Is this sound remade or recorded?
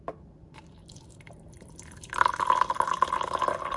recorded